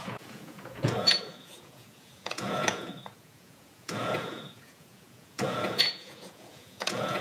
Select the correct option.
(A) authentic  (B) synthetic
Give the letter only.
B